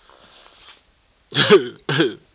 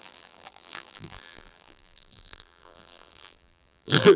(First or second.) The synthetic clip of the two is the second